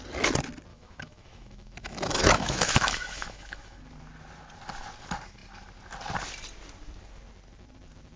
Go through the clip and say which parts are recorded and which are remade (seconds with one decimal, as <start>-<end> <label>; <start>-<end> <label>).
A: 0.0-0.7 recorded; 0.7-3.8 remade; 3.8-8.2 recorded